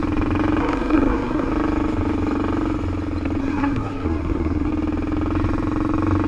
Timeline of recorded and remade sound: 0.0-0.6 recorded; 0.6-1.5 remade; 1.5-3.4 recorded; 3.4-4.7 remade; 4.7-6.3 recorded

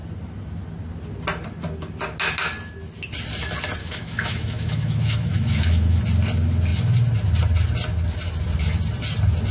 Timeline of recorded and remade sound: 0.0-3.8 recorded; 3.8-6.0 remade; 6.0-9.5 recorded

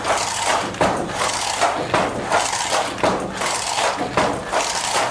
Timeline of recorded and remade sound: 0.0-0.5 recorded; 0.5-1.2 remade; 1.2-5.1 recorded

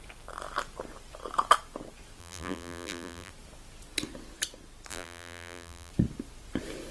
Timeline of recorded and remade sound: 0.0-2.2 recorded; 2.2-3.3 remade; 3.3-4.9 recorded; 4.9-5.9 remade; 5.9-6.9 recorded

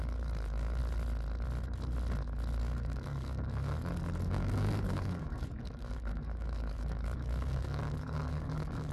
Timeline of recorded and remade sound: 0.0-0.8 remade; 0.8-2.6 recorded; 2.6-8.9 remade

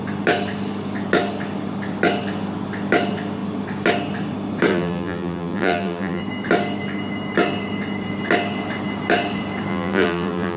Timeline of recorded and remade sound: 0.0-4.7 recorded; 4.7-6.2 remade; 6.2-9.7 recorded; 9.7-10.6 remade

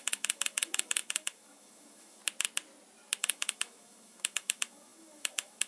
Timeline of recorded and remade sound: 0.0-2.2 remade; 2.2-3.2 recorded; 3.2-5.7 remade

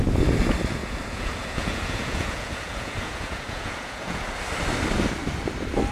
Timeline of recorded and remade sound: 0.0-0.8 recorded; 0.8-4.3 remade; 4.3-5.9 recorded